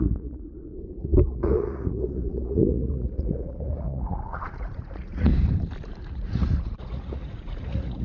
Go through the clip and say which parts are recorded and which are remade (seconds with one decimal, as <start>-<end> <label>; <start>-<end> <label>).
0.0-5.3 remade; 5.3-6.0 recorded; 6.0-8.0 remade